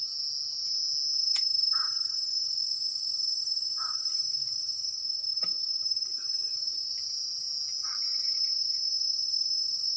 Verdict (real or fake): real